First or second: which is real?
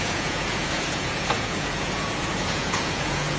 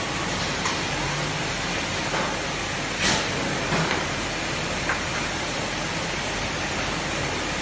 second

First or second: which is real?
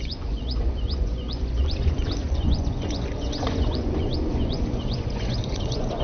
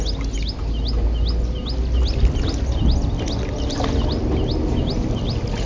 second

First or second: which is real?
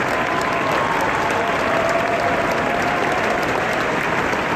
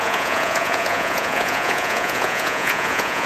first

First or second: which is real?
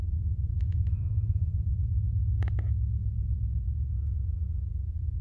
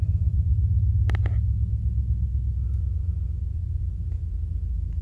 second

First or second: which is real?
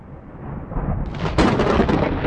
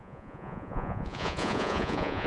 first